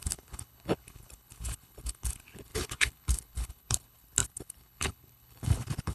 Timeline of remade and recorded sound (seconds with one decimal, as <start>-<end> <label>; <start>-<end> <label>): 0.0-5.9 remade